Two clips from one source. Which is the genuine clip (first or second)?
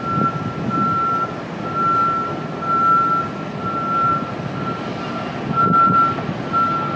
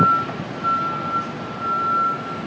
second